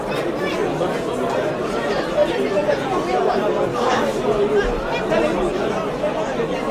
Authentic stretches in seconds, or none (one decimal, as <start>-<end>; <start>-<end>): 0.0-3.7; 4.4-6.7